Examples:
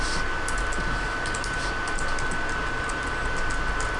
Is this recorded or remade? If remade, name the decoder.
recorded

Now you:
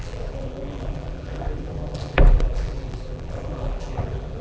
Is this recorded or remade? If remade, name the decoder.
remade, vocoder, BigVGAN v2